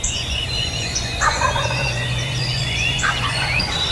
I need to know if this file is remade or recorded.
remade